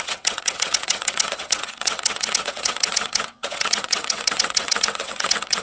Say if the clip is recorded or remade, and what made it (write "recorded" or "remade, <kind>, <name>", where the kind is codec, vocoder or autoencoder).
remade, vocoder, WaveNeXt